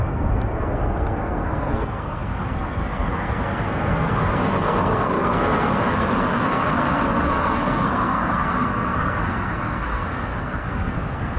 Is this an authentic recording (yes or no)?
no